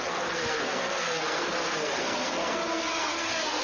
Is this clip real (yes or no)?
no